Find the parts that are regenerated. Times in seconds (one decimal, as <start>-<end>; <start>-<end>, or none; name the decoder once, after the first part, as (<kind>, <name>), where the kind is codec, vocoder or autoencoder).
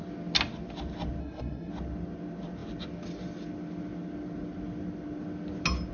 1.2-1.7 (codec, SNAC)